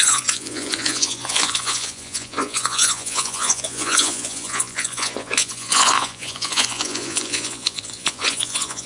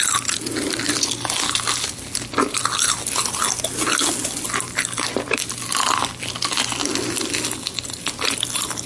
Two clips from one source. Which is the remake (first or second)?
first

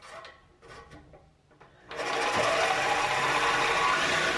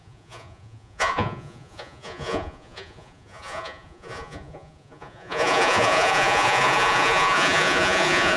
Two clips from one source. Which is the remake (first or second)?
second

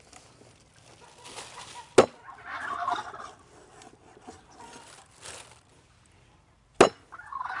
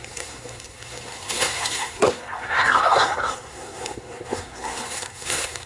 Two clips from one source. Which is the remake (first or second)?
second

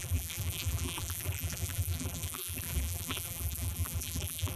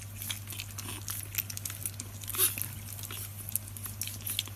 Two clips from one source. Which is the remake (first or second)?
first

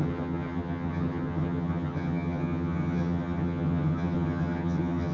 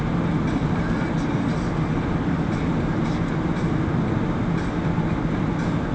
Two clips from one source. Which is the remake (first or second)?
first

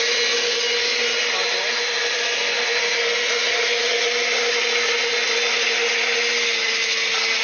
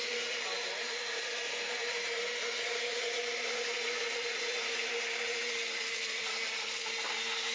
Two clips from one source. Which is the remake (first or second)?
second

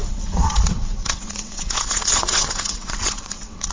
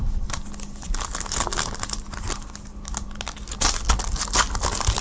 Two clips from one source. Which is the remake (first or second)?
first